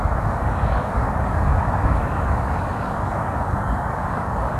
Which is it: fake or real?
fake